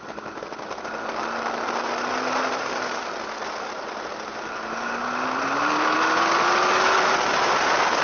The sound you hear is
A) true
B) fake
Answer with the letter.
A